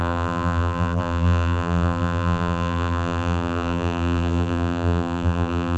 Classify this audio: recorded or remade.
remade